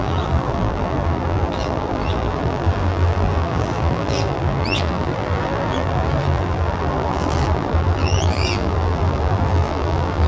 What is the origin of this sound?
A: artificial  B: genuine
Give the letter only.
A